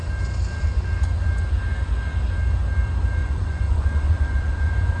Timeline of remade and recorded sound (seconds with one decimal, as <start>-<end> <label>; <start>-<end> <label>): 0.0-3.2 recorded; 3.2-5.0 remade